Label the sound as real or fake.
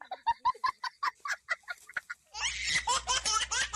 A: real